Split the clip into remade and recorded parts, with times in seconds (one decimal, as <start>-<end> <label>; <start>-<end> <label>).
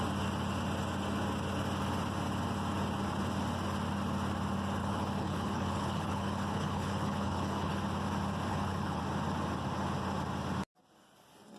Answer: 0.0-4.8 recorded; 4.8-7.8 remade; 7.8-8.5 recorded; 8.5-9.0 remade; 9.0-11.6 recorded